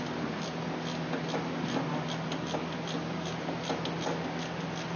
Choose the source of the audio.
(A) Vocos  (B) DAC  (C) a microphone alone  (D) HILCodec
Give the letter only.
C